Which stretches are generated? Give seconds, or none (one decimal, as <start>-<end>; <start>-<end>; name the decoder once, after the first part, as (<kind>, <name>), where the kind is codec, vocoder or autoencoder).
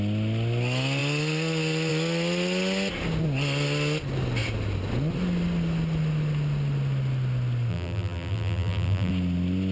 7.7-9.1 (vocoder, BigVGAN v2)